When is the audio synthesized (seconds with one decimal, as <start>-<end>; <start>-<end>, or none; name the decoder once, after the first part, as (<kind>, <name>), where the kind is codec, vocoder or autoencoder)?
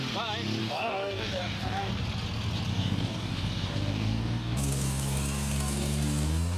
0.6-1.9 (codec, DAC); 2.7-6.6